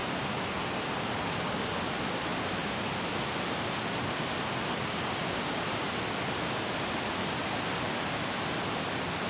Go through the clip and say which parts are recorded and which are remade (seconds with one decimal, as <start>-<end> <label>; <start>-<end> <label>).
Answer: 0.0-9.3 recorded